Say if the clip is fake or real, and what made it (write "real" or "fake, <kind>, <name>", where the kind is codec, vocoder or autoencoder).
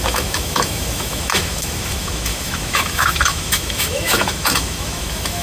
fake, autoencoder, DAC-VAE